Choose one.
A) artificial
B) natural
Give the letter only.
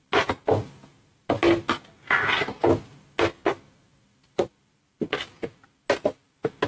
B